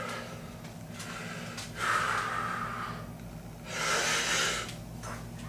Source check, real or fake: real